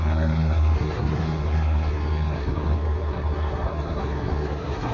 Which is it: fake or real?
fake